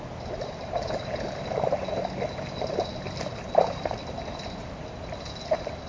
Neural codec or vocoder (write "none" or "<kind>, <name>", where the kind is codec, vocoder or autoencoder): none